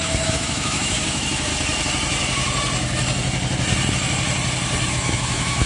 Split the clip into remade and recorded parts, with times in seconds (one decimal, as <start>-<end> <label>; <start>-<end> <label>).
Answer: 0.0-1.5 remade; 1.5-4.9 recorded; 4.9-5.7 remade